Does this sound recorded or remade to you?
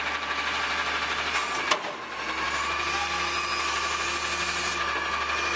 recorded